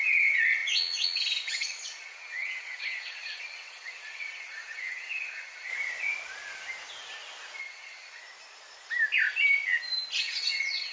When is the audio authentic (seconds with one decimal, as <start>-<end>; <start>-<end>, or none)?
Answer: 5.7-7.6; 8.2-10.2